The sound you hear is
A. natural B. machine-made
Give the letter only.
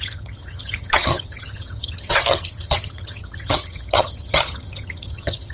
B